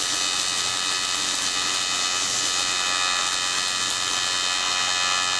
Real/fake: real